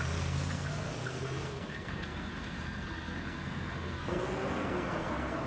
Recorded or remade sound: remade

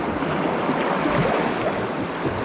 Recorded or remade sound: recorded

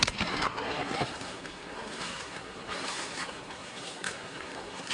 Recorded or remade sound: remade